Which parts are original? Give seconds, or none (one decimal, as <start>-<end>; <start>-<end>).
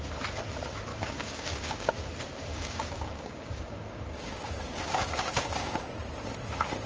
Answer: 0.0-0.9; 1.9-2.5; 5.9-6.9